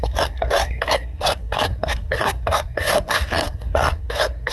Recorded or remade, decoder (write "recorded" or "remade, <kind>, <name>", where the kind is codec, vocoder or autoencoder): remade, codec, SNAC